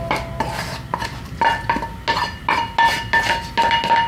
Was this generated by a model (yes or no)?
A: no